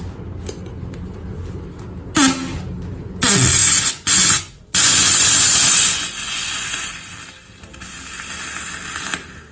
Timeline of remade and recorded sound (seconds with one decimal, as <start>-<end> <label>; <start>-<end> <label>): 0.0-3.6 recorded; 3.6-7.1 remade; 7.1-9.5 recorded